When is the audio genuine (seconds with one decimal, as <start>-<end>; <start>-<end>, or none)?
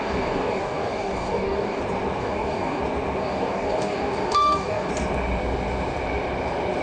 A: 1.8-2.2; 2.8-3.2; 4.9-6.8